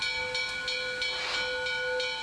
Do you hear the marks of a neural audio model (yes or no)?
no